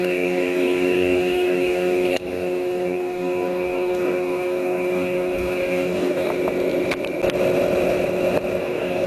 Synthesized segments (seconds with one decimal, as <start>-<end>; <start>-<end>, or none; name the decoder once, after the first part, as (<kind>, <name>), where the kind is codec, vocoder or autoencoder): 0.0-6.3 (codec, DAC); 8.6-9.1